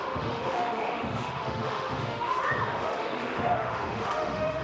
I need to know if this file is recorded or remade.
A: remade